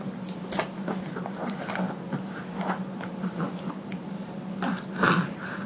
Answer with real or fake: real